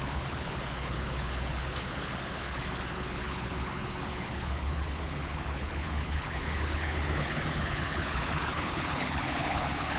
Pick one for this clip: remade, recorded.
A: remade